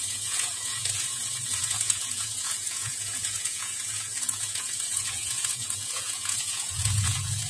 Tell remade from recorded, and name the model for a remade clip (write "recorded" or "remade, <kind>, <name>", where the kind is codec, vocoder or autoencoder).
remade, vocoder, Vocos